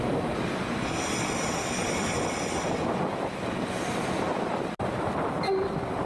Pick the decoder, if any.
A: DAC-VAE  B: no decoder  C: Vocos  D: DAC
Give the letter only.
B